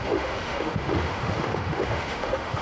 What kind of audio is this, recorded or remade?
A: remade